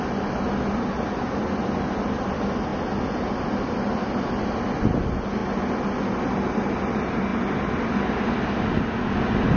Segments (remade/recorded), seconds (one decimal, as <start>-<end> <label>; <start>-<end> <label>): 0.0-9.6 recorded